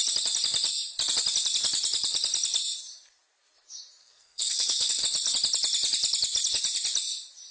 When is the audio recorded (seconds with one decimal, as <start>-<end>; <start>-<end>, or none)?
0.0-4.0; 5.0-7.5